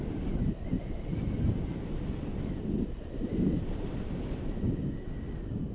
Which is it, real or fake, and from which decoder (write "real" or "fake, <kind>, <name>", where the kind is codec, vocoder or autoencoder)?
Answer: real